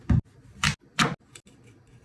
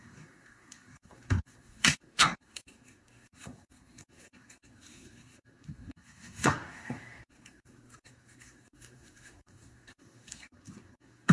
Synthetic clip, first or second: second